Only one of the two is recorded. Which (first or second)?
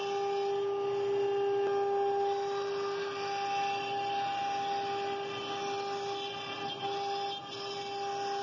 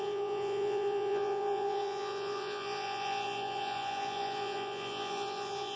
first